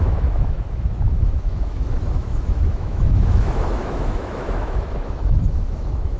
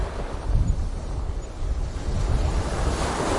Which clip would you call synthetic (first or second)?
first